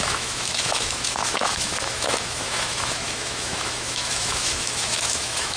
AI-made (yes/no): yes